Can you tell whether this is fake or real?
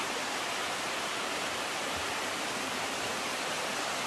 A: real